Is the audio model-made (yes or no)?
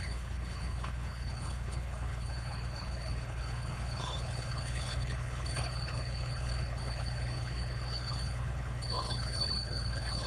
yes